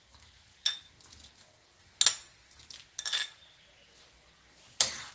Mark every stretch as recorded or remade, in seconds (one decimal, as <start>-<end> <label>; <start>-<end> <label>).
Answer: 0.0-5.1 recorded

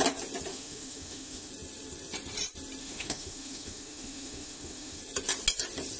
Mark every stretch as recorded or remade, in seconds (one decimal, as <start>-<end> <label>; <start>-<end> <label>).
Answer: 0.0-0.5 recorded; 0.5-1.5 remade; 1.5-2.8 recorded; 2.8-5.0 remade; 5.0-6.0 recorded

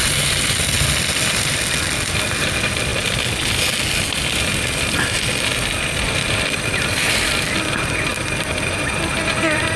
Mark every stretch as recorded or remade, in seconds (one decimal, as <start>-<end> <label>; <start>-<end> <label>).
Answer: 0.0-9.8 recorded

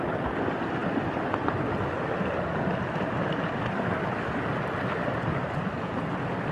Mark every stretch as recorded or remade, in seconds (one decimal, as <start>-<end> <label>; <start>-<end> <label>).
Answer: 0.0-6.5 recorded

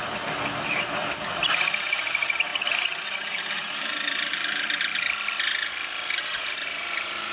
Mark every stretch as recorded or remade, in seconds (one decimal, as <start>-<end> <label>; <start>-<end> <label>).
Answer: 0.0-7.3 recorded

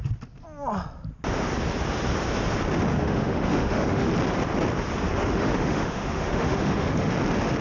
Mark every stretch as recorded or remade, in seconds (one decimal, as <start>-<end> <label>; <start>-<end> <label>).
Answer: 0.0-2.9 recorded; 2.9-4.1 remade; 4.1-5.2 recorded; 5.2-7.1 remade; 7.1-7.6 recorded

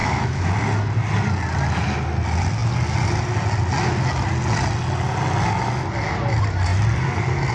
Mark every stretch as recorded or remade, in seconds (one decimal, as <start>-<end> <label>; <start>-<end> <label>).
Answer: 0.0-0.5 remade; 0.5-7.5 recorded